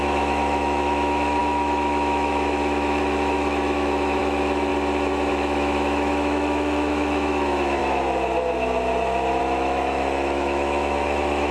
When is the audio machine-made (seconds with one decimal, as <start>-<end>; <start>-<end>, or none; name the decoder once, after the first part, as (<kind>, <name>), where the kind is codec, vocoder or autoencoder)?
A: 0.0-4.7 (autoencoder, DAC-VAE); 5.3-7.8; 9.4-11.5